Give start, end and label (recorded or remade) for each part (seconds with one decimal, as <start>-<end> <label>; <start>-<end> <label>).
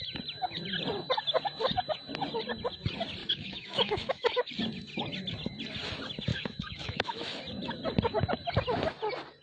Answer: 0.0-3.2 recorded; 3.2-4.5 remade; 4.5-6.3 recorded; 6.3-7.4 remade; 7.4-9.4 recorded